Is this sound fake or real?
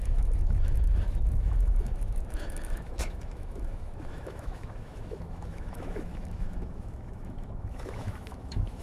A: fake